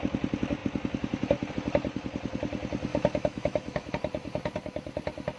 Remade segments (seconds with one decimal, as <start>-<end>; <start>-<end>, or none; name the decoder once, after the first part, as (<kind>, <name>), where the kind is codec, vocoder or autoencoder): 2.9-3.9 (autoencoder, DAC-VAE)